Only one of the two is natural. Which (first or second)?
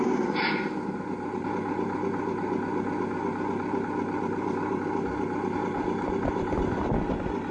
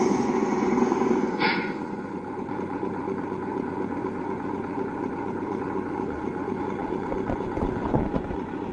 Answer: first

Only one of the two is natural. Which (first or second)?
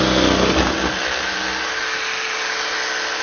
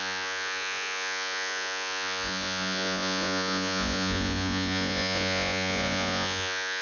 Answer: first